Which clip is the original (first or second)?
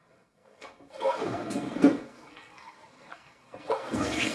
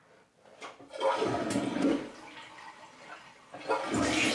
second